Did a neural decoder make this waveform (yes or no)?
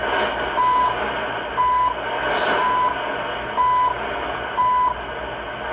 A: no